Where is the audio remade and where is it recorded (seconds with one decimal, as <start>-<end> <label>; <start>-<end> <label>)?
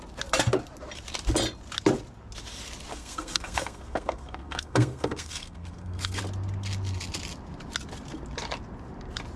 0.0-2.9 recorded; 2.9-6.2 remade; 6.2-9.4 recorded